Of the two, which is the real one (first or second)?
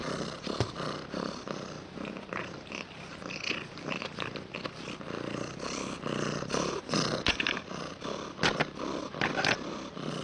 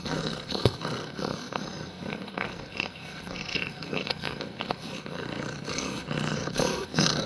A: first